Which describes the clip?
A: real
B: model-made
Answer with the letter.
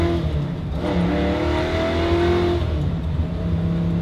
A